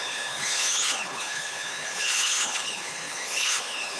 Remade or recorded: remade